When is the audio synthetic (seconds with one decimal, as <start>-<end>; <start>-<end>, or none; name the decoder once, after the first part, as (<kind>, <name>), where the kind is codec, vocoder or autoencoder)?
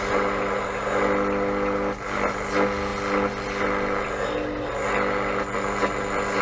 none